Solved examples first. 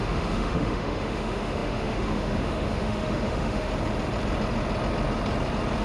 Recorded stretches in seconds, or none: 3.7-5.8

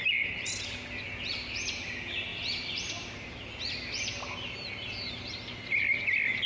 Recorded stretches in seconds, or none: 0.0-6.5

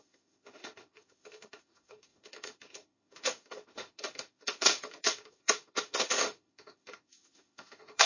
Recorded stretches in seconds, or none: none

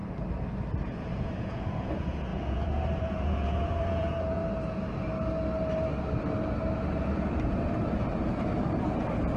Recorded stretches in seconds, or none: 0.0-0.8; 4.4-9.4

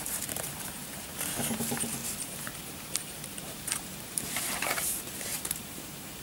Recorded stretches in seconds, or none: none

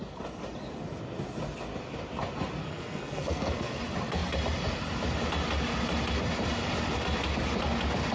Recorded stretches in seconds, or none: 0.0-2.6; 3.8-8.1

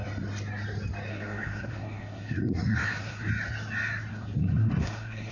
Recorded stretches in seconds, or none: 0.0-1.1; 3.3-4.1